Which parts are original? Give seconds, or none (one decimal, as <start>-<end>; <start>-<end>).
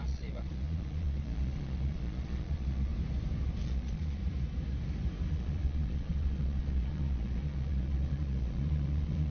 2.9-3.6; 4.2-5.3